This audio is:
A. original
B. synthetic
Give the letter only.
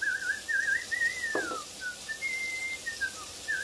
A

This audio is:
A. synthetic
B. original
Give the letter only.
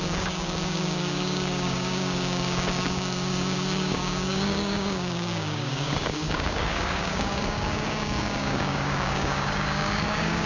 A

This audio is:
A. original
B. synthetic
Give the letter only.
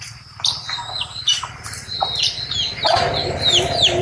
A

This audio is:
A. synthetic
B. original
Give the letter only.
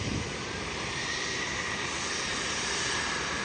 A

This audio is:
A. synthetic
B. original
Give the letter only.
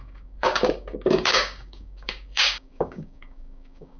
A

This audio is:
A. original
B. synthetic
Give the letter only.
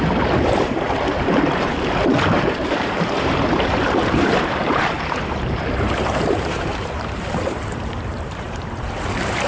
B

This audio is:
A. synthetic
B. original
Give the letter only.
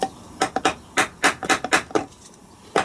A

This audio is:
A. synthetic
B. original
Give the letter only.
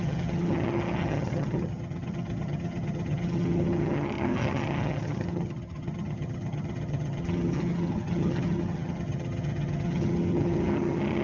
A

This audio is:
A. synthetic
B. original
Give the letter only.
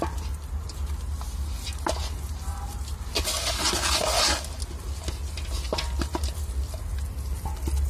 B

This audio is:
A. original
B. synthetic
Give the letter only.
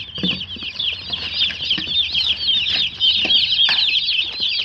A